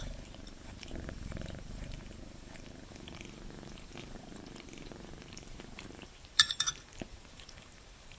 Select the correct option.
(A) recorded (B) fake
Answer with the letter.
B